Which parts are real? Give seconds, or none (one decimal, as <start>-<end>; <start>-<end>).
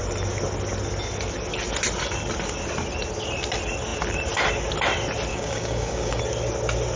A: 0.0-5.3; 6.2-7.0